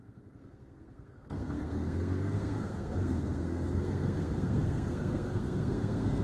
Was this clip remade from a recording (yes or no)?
yes